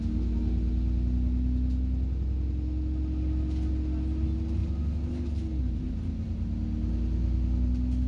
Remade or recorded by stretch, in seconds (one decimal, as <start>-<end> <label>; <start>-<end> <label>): 0.0-8.1 recorded